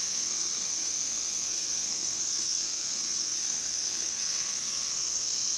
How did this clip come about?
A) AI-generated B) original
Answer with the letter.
A